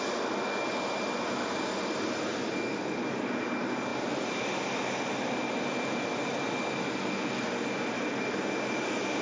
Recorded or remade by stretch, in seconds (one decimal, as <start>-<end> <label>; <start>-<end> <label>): 0.0-9.2 recorded